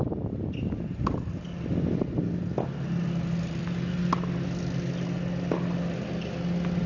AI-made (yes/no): no